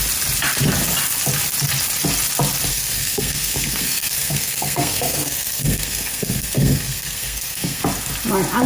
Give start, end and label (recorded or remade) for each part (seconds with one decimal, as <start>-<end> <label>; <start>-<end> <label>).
0.0-2.7 recorded; 2.7-7.8 remade; 7.8-8.7 recorded